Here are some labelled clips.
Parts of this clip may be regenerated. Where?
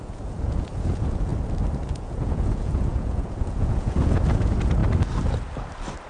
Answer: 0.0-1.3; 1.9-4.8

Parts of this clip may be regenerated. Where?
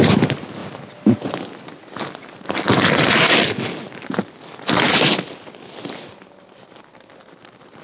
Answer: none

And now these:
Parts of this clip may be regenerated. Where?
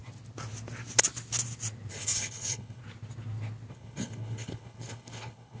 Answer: 1.9-2.8; 3.7-5.6